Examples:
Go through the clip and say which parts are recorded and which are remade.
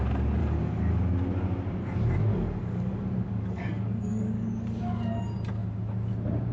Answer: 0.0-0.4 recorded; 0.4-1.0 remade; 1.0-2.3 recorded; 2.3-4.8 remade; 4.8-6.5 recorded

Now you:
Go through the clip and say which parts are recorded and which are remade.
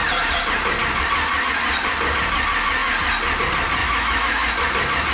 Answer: 0.0-3.8 recorded; 3.8-4.5 remade; 4.5-5.1 recorded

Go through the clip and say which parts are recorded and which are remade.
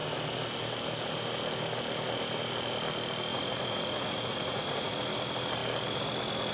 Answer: 0.0-3.3 recorded; 3.3-4.9 remade; 4.9-6.5 recorded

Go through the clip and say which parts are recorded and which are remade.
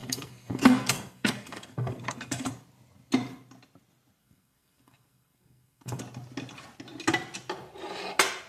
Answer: 0.0-2.5 remade; 2.5-4.2 recorded; 4.2-6.0 remade; 6.0-8.5 recorded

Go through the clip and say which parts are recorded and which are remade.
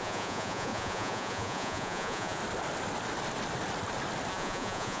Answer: 0.0-2.4 remade; 2.4-4.3 recorded; 4.3-5.0 remade